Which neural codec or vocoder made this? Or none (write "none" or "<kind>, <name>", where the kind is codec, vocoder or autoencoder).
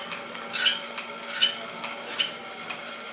none